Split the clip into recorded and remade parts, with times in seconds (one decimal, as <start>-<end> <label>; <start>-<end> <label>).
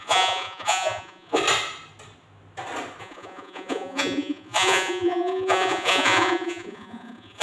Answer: 0.0-1.4 remade; 1.4-3.0 recorded; 3.0-7.4 remade